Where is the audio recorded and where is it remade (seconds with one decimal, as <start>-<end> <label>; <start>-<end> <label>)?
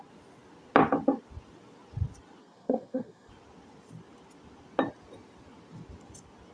0.0-2.4 recorded; 2.4-3.3 remade; 3.3-6.5 recorded